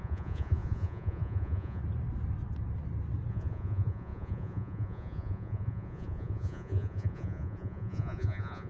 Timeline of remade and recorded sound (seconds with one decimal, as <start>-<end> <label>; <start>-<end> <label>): 0.0-1.8 remade; 1.8-3.3 recorded; 3.3-8.7 remade